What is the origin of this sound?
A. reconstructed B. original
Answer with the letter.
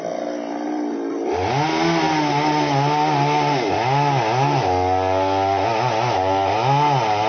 B